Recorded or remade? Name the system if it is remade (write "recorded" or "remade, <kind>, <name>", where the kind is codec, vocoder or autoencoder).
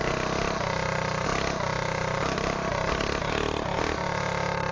recorded